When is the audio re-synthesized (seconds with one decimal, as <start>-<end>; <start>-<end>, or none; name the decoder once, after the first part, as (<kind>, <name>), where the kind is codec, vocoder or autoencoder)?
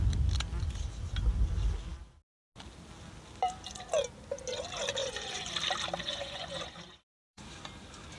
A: 5.0-5.5 (vocoder, Vocos); 6.0-7.4